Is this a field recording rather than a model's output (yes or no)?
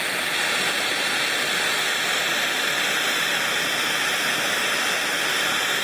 yes